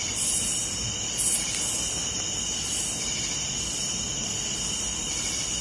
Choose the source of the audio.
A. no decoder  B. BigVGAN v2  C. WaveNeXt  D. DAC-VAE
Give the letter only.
A